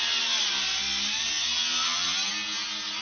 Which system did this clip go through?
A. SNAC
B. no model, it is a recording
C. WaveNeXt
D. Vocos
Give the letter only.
B